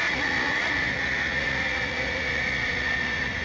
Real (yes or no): no